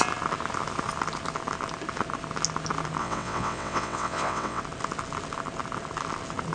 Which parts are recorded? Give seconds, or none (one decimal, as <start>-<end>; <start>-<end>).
0.0-3.0; 4.6-6.5